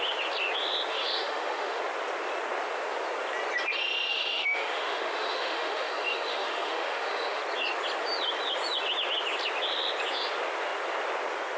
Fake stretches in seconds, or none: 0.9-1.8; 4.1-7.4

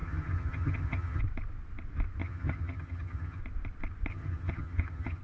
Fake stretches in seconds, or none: 0.0-1.2; 2.2-3.4; 4.1-5.2

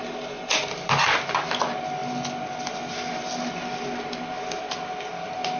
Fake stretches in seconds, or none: none

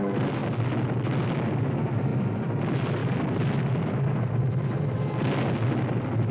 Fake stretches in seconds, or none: none

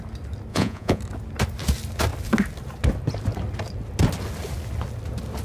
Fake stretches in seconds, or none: 0.5-1.0

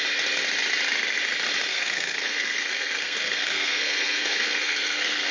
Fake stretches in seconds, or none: 1.7-5.3

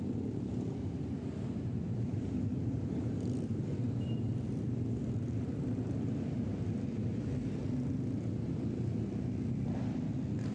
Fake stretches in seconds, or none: 0.0-7.6; 8.4-10.5